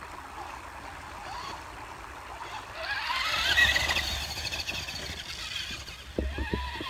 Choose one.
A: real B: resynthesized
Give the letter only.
A